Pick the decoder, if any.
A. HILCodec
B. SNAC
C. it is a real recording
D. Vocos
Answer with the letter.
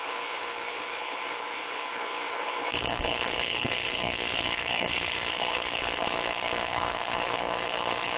A